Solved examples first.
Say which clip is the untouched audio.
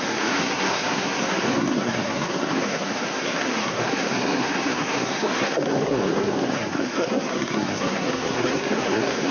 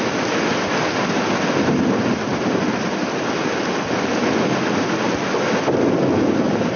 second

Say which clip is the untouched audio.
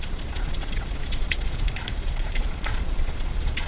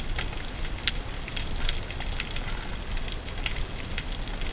second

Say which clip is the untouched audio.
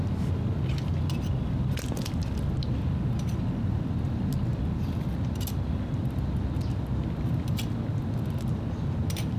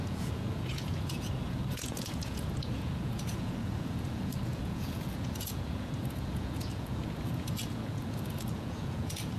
first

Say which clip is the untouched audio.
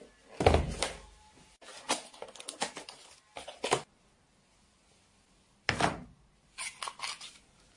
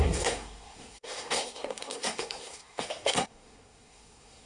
first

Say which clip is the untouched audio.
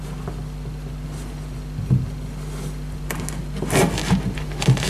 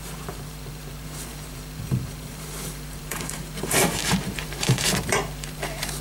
first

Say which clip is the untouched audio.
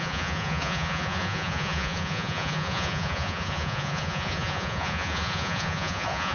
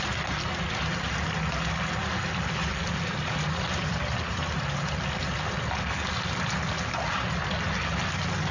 second